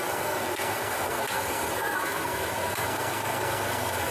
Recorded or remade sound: remade